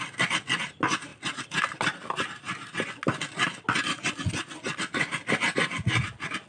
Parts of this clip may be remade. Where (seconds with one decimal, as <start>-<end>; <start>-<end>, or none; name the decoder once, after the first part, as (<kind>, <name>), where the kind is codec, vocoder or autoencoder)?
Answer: none